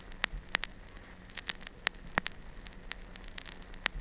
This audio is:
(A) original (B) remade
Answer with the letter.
A